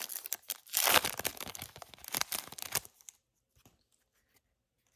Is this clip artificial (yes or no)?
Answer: no